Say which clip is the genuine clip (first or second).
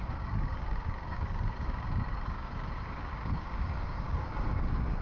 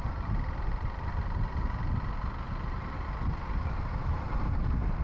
second